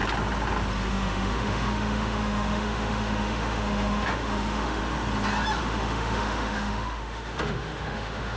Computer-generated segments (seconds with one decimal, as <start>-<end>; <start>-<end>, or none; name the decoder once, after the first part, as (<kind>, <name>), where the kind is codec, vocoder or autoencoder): 0.9-4.8 (autoencoder, DAC-VAE); 5.6-8.4